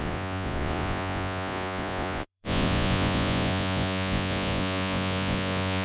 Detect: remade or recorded remade